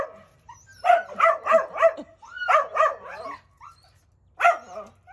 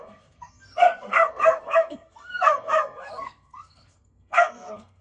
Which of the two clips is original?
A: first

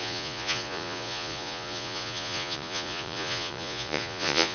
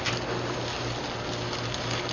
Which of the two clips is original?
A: second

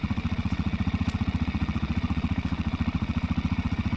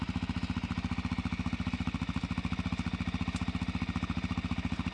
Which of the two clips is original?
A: second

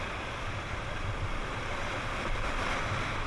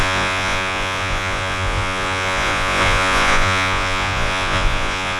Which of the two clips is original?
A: first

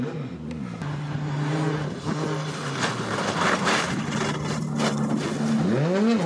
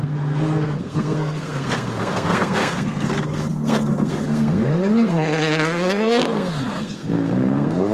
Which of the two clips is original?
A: first